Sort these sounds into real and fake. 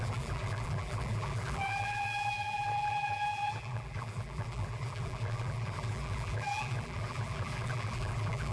fake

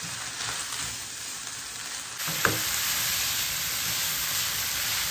real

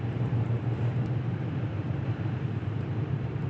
fake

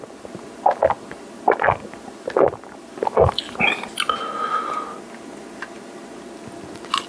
real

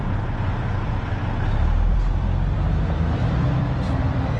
fake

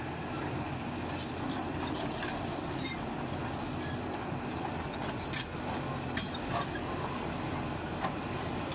real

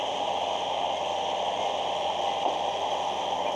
real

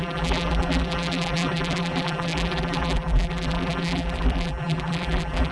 fake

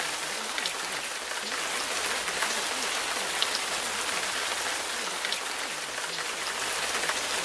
real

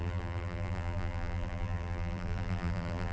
fake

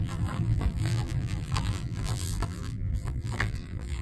fake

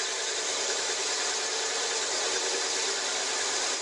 real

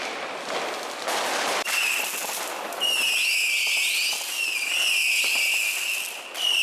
real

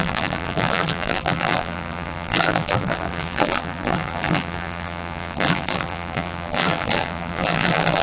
fake